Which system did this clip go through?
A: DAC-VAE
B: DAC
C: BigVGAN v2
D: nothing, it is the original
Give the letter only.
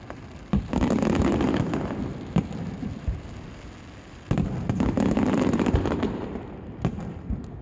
D